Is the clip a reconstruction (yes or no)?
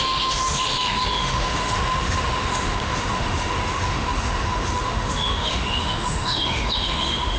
yes